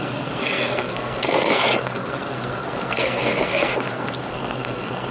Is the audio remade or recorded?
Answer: remade